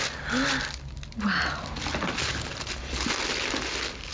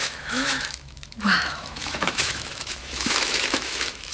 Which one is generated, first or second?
second